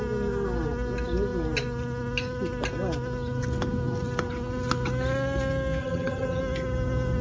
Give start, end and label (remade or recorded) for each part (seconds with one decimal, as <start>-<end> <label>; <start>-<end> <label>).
0.0-5.8 recorded; 5.8-6.4 remade; 6.4-7.2 recorded